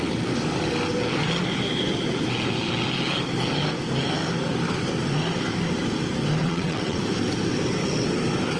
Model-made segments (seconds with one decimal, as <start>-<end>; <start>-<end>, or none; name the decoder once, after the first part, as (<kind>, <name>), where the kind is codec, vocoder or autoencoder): 6.4-7.0 (vocoder, WaveNeXt)